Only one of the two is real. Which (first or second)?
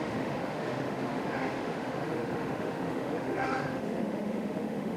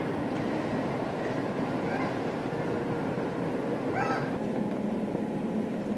second